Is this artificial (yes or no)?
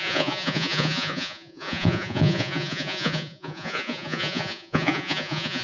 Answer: yes